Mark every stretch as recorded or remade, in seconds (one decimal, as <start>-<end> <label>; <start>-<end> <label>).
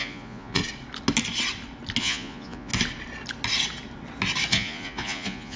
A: 0.0-0.6 remade; 0.6-2.0 recorded; 2.0-2.7 remade; 2.7-4.5 recorded; 4.5-5.6 remade